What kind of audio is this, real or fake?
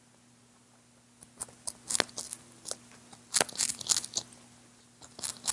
real